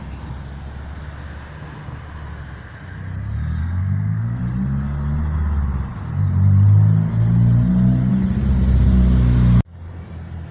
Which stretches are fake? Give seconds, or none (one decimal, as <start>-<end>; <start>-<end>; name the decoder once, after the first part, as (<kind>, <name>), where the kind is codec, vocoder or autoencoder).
3.6-4.4 (codec, SNAC)